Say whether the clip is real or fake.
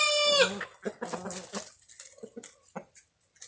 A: real